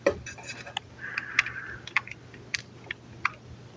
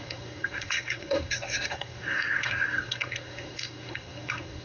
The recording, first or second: first